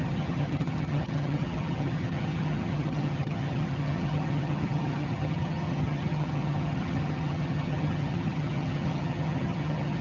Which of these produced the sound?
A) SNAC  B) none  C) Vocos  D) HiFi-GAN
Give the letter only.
D